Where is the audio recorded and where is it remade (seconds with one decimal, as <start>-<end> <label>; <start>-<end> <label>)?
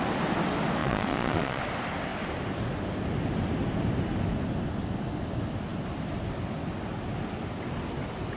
0.0-0.8 recorded; 0.8-1.6 remade; 1.6-8.4 recorded